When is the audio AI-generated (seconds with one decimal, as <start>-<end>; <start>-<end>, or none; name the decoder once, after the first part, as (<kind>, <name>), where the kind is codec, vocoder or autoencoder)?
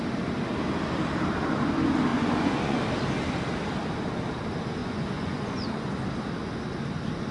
2.1-2.8 (vocoder, Vocos); 4.8-5.9